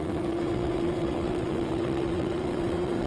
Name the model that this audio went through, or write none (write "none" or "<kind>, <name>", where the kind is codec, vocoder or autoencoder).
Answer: vocoder, WaveNeXt